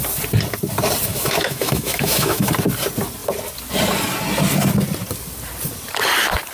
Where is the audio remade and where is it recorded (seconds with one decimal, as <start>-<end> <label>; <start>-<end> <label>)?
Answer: 0.0-1.1 recorded; 1.1-2.5 remade; 2.5-6.5 recorded